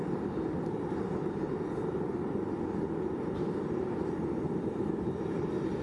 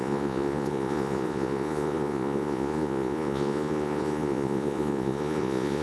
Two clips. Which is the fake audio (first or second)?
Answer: second